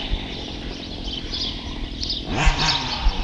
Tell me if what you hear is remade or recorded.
remade